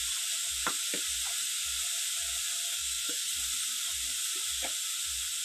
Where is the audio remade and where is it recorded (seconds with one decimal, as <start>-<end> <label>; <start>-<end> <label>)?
0.0-2.7 recorded; 2.7-3.3 remade; 3.3-5.4 recorded

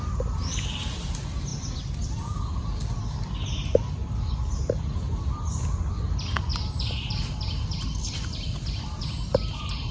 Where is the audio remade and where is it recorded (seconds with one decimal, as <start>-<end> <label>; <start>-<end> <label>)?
0.0-9.9 recorded